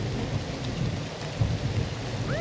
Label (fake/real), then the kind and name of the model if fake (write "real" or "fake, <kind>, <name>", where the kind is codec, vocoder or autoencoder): real